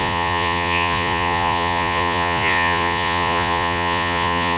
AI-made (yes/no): yes